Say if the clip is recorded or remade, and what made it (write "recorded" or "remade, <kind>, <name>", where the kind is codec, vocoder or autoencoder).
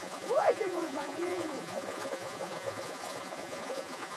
remade, vocoder, Vocos